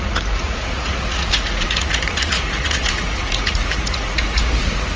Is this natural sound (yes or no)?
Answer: no